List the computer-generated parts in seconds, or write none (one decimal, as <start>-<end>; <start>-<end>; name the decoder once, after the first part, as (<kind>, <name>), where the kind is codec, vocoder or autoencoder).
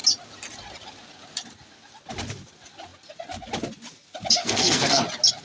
4.4-5.0 (codec, SNAC)